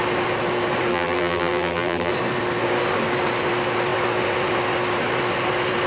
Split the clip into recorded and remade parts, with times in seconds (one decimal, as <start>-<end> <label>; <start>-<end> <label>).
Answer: 0.0-0.9 recorded; 0.9-2.1 remade; 2.1-5.9 recorded